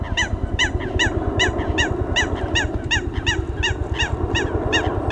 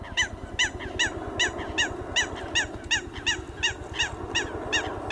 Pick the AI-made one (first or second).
first